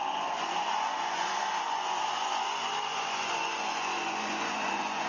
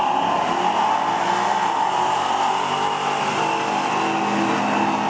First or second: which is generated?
first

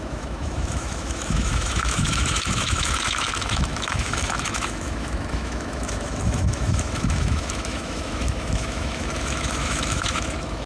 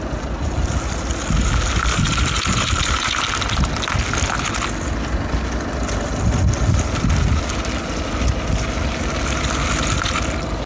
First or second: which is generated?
first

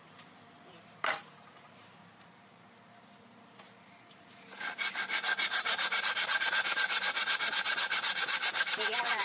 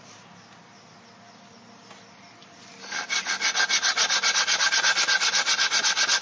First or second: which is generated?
first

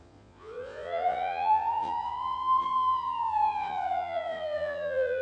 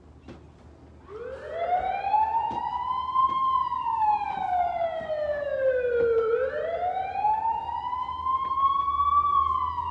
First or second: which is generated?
first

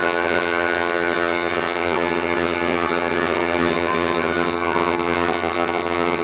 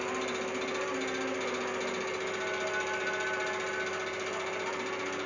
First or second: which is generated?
first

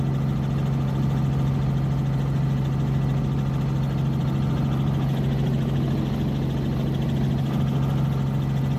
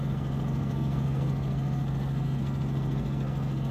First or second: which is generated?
second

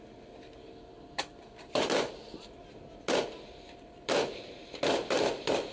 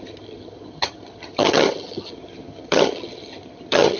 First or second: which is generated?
second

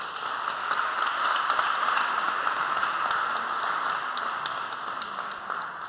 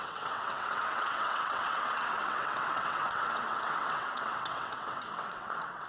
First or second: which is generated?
second